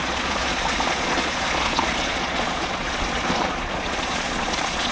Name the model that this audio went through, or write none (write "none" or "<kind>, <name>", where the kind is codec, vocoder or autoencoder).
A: vocoder, Vocos